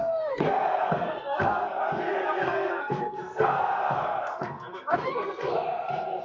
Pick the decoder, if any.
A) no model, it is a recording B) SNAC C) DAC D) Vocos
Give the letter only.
B